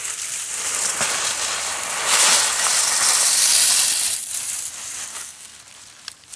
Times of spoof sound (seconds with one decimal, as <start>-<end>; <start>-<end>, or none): 5.1-5.6